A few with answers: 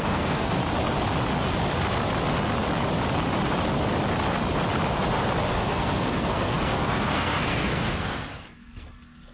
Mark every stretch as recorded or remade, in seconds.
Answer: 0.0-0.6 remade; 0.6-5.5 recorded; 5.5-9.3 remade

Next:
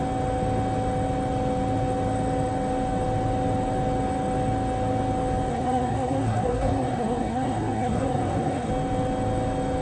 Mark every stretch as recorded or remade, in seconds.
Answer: 0.0-5.5 recorded; 5.5-8.7 remade; 8.7-9.8 recorded

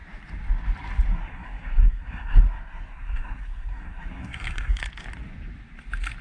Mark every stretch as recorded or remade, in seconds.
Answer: 0.0-1.1 recorded; 1.1-4.8 remade; 4.8-6.2 recorded

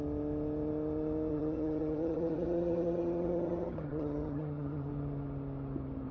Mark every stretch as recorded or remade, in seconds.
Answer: 0.0-1.3 recorded; 1.3-4.9 remade; 4.9-6.1 recorded

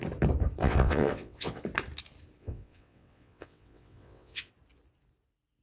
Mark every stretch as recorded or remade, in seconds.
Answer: 0.0-0.6 recorded; 0.6-1.6 remade; 1.6-2.4 recorded; 2.4-4.5 remade; 4.5-5.6 recorded

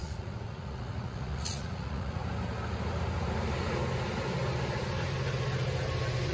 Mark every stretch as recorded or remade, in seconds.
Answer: 0.0-2.2 remade; 2.2-6.3 recorded